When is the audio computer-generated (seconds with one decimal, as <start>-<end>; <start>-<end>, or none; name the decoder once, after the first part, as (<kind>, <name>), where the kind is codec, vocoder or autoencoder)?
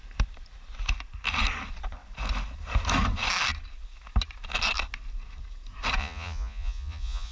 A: 6.0-7.3 (vocoder, Vocos)